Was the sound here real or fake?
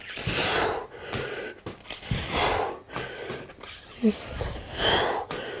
real